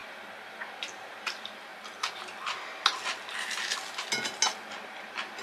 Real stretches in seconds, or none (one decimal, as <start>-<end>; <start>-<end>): 1.7-4.9